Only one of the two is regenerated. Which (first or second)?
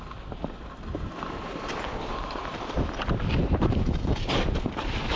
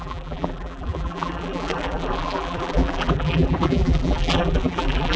second